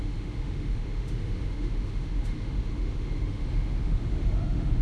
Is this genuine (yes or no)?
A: no